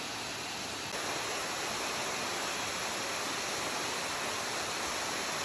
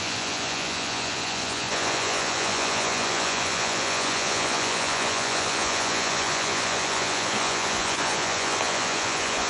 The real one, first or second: first